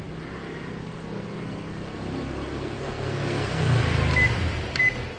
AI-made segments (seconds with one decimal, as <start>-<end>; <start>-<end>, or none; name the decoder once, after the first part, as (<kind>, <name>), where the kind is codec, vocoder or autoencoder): 0.7-3.8 (codec, SNAC)